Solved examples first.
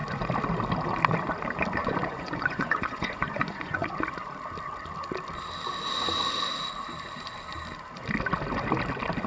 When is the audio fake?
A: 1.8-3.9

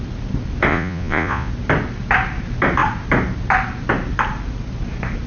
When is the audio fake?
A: 0.7-1.5

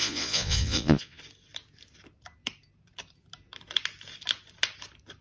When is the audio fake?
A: 0.0-1.2

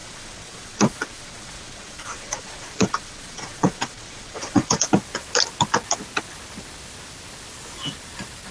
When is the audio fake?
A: 0.0-4.9

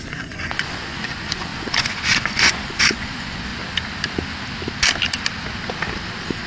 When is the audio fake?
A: 0.0-3.5; 6.1-6.5

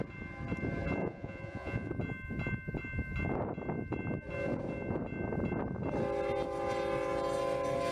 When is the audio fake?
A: 1.0-1.9

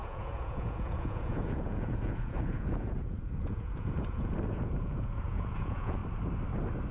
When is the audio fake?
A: 0.0-6.0

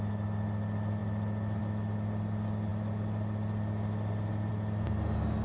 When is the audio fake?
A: none